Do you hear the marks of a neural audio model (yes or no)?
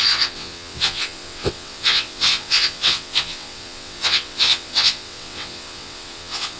yes